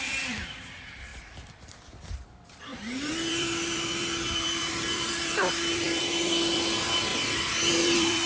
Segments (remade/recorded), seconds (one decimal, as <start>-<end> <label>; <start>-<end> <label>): 0.0-7.1 remade; 7.1-7.7 recorded; 7.7-8.3 remade